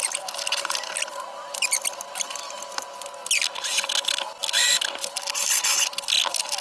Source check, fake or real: real